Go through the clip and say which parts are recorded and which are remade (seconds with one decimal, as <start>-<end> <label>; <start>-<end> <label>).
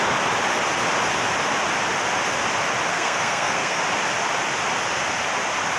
0.0-2.9 recorded; 2.9-3.8 remade; 3.8-5.8 recorded